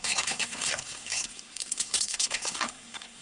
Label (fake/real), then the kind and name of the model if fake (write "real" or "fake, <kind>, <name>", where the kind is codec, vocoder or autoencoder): fake, codec, SNAC